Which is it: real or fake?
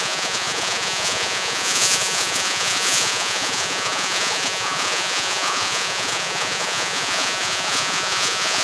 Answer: fake